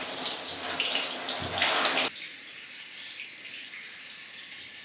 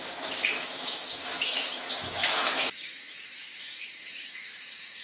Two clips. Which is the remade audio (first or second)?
second